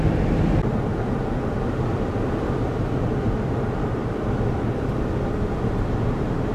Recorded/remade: recorded